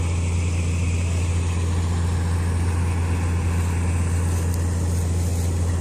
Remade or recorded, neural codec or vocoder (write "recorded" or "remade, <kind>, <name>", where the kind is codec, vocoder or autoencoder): recorded